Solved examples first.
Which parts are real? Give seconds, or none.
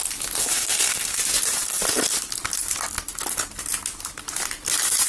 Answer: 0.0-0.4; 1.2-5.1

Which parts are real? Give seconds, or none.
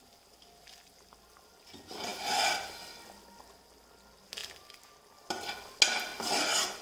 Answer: 0.0-6.8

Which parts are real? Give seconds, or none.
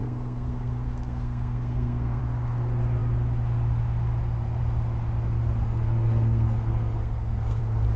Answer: 2.2-5.6; 7.6-8.0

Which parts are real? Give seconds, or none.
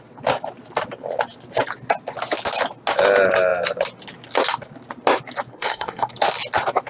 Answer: 0.0-5.5; 6.1-6.9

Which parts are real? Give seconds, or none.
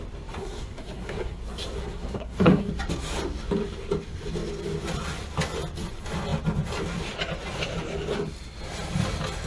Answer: 0.0-0.4; 1.4-1.8; 2.7-9.5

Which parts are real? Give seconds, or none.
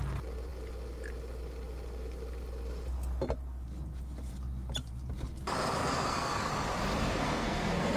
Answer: 0.0-5.8; 6.5-6.9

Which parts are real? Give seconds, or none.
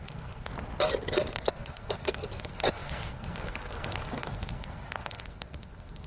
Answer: 0.5-1.3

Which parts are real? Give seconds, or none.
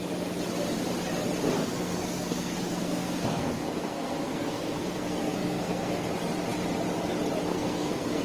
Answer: 0.0-1.6; 6.1-7.5